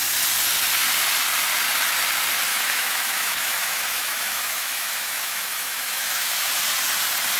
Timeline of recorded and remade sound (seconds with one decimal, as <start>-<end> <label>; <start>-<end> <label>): 0.0-2.5 recorded; 2.5-6.5 remade; 6.5-7.4 recorded

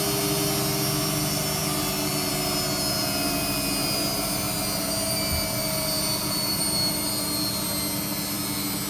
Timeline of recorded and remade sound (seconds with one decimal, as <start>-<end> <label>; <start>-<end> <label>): 0.0-8.9 recorded

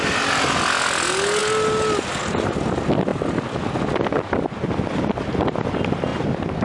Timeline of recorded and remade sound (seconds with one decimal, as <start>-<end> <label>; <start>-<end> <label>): 0.0-6.6 recorded

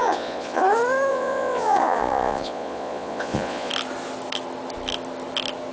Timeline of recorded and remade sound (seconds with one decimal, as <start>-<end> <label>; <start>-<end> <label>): 0.0-0.6 remade; 0.6-1.1 recorded; 1.1-3.7 remade; 3.7-5.7 recorded

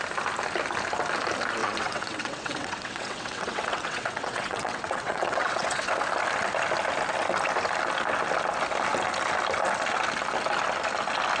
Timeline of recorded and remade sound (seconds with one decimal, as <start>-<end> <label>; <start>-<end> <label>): 0.0-1.6 recorded; 1.6-5.9 remade; 5.9-11.4 recorded

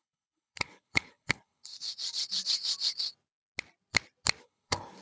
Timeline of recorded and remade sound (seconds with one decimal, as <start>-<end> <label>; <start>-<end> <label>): 0.0-1.7 remade; 1.7-4.4 recorded; 4.4-5.0 remade